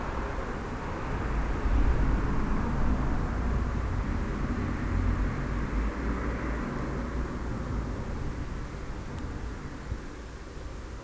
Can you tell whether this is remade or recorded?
recorded